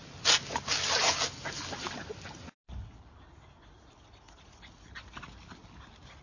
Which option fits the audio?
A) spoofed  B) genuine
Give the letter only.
B